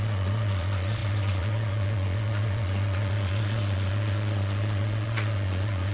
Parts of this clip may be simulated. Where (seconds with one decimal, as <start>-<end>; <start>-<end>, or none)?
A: 0.0-5.9